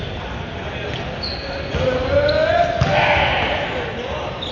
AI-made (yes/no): no